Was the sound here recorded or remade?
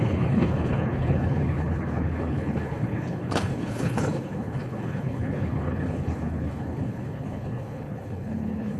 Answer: remade